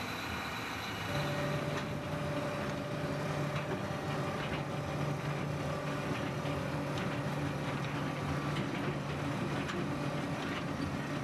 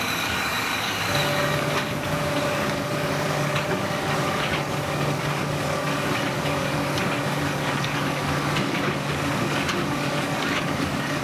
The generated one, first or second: second